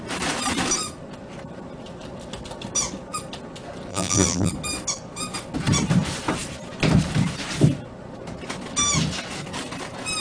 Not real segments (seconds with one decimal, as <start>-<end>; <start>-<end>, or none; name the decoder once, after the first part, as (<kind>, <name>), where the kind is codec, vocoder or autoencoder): 3.9-4.5 (vocoder, BigVGAN v2)